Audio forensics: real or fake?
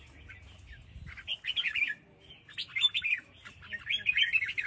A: real